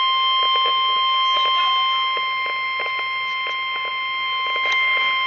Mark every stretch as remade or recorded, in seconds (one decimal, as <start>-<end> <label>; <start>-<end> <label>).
0.0-5.3 recorded